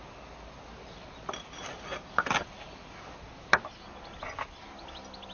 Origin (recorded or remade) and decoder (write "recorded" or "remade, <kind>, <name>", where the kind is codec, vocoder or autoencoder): recorded